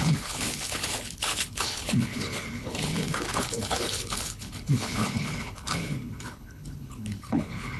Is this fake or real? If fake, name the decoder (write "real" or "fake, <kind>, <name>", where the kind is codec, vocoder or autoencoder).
fake, codec, HILCodec